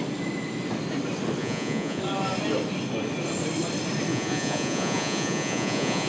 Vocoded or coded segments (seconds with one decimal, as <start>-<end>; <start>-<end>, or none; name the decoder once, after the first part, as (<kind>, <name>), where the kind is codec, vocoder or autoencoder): 1.4-2.0 (vocoder, Vocos); 4.1-6.1